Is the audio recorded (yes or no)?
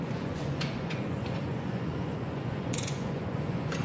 no